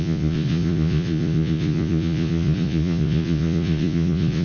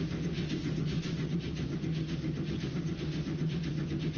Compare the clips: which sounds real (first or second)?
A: second